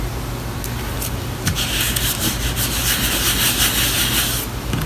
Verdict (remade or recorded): recorded